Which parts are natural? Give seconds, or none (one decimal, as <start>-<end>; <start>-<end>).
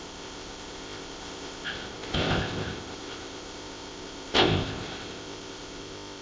none